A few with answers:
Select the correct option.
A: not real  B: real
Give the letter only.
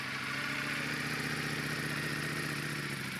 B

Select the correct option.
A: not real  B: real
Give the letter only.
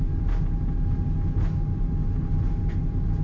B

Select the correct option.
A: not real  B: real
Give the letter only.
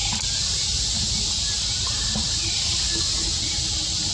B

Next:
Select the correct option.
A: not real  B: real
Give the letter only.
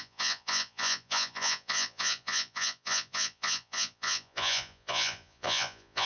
A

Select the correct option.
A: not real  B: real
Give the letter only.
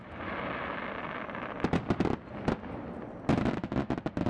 B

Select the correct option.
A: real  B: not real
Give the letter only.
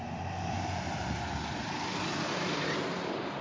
A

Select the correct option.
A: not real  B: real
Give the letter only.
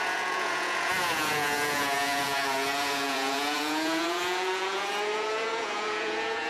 A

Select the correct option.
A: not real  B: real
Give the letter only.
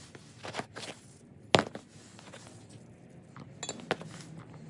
B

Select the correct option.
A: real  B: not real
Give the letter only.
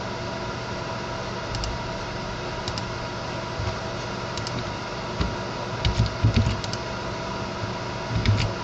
A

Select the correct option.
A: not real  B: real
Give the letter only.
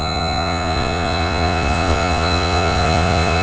A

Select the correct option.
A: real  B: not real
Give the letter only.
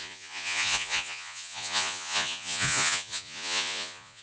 B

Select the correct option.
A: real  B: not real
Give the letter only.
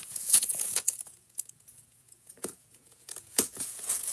B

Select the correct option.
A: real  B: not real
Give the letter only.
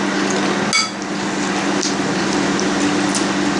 A